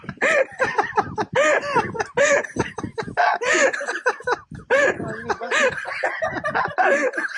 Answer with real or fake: real